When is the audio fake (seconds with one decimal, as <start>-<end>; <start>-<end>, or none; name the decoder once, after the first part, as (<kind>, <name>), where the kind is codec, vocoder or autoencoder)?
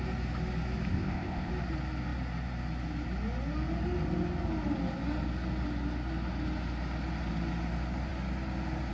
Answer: 0.9-1.5 (codec, ZipCodec)